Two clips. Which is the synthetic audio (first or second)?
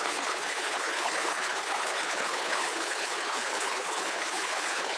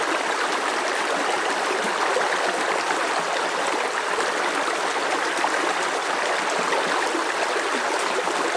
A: first